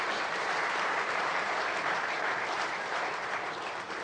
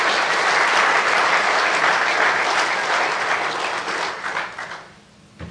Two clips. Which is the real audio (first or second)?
second